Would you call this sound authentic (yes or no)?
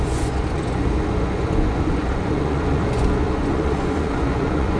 no